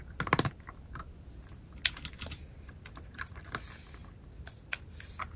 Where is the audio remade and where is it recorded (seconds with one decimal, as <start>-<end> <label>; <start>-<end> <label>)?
0.0-5.4 recorded